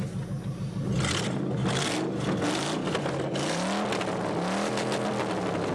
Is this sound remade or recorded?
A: recorded